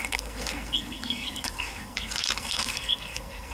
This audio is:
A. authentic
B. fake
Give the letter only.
B